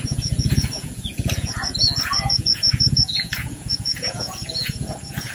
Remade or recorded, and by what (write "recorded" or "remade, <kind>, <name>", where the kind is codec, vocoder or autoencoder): remade, vocoder, Vocos